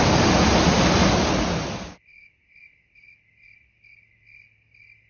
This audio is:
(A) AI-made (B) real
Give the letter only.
B